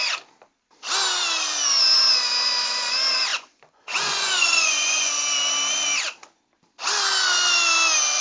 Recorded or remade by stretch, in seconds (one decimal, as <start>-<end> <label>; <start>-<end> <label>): 0.0-3.3 recorded; 3.3-5.1 remade; 5.1-8.2 recorded